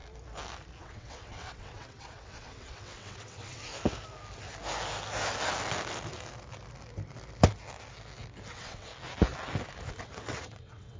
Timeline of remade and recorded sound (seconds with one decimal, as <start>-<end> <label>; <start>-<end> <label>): 0.0-0.8 recorded; 0.8-3.7 remade; 3.7-8.5 recorded; 8.5-8.9 remade; 8.9-10.0 recorded; 10.0-11.0 remade